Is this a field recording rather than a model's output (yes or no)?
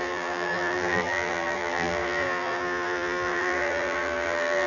no